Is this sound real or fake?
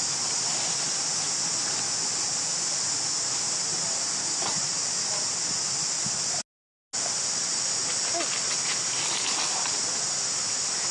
real